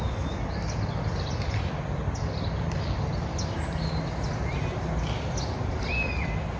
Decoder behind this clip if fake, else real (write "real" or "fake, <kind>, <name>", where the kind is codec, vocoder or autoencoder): real